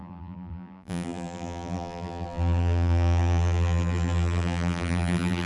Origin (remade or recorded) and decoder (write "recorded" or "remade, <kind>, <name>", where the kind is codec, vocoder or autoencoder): remade, vocoder, BigVGAN v2